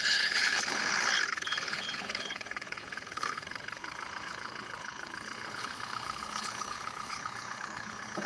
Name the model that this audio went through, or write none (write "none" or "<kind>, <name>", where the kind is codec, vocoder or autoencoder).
codec, HILCodec